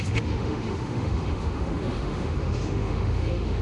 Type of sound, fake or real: fake